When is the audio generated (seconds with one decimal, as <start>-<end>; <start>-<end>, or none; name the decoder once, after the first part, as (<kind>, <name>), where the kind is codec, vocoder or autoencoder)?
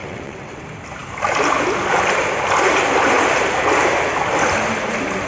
0.0-0.6 (vocoder, WaveNeXt)